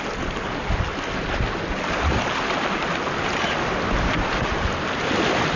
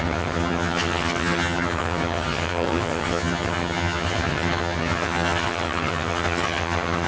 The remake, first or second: second